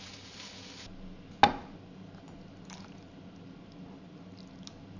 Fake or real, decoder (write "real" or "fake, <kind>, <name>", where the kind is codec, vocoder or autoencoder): real